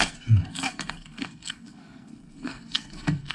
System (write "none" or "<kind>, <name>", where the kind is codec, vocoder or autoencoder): codec, SNAC